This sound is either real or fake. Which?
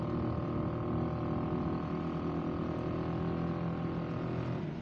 real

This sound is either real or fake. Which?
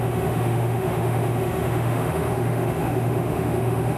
fake